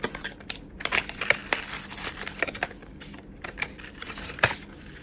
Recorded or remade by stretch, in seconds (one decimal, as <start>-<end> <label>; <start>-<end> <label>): 0.0-1.4 remade; 1.4-2.1 recorded; 2.1-5.0 remade